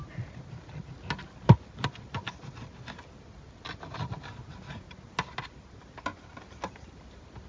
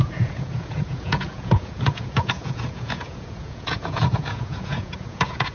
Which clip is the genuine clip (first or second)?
first